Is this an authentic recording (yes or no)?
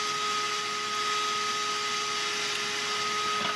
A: yes